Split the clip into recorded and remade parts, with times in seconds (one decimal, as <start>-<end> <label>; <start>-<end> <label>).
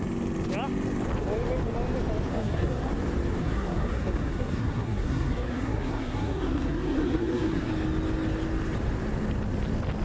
0.0-2.3 recorded; 2.3-2.9 remade; 2.9-3.4 recorded; 3.4-7.7 remade; 7.7-10.0 recorded